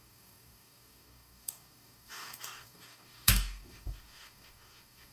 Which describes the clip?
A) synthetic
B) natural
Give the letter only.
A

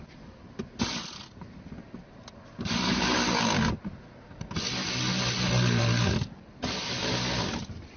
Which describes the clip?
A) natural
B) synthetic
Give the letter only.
A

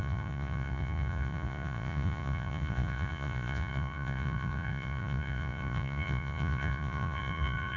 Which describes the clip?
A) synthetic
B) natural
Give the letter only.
A